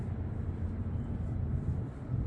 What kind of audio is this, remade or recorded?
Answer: recorded